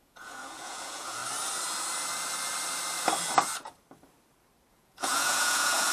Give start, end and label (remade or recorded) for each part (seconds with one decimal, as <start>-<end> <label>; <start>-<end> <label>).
0.0-1.2 remade; 1.2-4.7 recorded; 4.7-5.9 remade

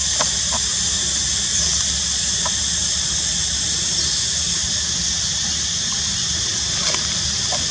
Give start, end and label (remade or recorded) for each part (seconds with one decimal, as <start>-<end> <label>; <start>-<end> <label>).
0.0-7.7 recorded

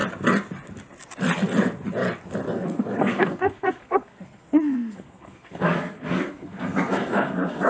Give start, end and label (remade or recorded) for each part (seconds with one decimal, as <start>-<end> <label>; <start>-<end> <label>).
0.0-2.5 recorded; 2.5-7.7 remade

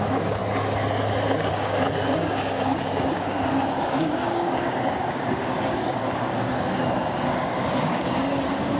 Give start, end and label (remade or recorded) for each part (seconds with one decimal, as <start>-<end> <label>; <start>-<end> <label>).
0.0-0.4 remade; 0.4-1.5 recorded; 1.5-8.8 remade

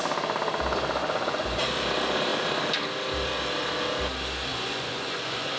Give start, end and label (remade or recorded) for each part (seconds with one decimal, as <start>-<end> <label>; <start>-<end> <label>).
0.0-1.0 recorded; 1.0-1.6 remade; 1.6-4.5 recorded; 4.5-5.6 remade

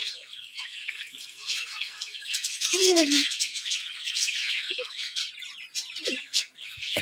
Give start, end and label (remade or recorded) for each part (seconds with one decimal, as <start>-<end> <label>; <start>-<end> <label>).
0.0-5.2 remade; 5.2-6.2 recorded; 6.2-7.0 remade